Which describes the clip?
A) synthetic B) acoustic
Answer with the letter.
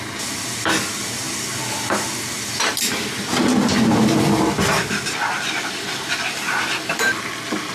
B